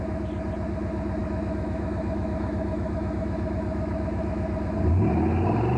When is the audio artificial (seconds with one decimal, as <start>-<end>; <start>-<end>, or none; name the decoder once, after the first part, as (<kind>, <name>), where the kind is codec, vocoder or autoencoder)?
1.2-4.7 (autoencoder, DAC-VAE)